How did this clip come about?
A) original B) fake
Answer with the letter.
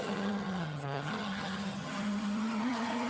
B